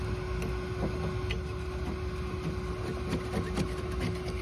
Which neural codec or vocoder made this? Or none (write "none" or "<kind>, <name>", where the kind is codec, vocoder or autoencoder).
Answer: none